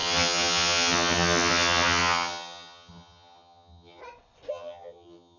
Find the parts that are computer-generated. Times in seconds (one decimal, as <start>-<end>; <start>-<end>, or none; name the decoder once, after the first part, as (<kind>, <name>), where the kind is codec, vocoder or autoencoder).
0.0-4.0 (vocoder, HiFi-GAN); 4.5-5.4

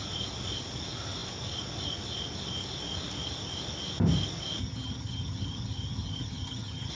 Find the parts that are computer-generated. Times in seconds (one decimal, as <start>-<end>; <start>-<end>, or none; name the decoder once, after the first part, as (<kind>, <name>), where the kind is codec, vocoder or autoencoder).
4.6-6.9 (vocoder, HiFi-GAN)

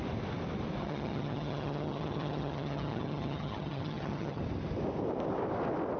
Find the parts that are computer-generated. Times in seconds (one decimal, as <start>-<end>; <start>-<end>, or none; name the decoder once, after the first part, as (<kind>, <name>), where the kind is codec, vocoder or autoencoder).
0.8-4.4 (vocoder, HiFi-GAN)